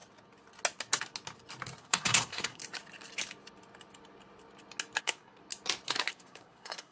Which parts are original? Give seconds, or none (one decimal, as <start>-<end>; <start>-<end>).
0.0-1.8; 2.6-5.0; 5.4-6.1